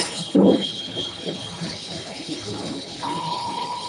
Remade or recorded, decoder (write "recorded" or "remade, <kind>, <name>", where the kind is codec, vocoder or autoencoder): remade, codec, HILCodec